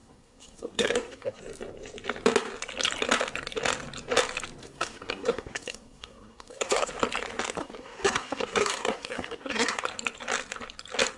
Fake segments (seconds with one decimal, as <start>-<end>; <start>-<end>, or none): 0.0-1.4; 4.6-6.9; 7.6-9.8

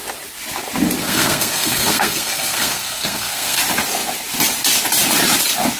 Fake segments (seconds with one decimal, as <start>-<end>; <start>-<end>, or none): 1.0-3.6

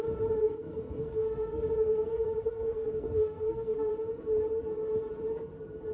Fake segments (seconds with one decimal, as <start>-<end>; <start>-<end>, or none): 0.4-3.9

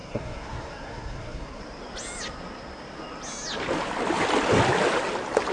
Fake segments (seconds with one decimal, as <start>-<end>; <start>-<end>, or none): 0.0-1.6

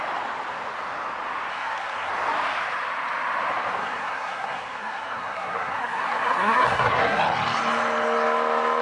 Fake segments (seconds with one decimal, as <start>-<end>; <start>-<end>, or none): 1.5-2.1; 3.8-7.2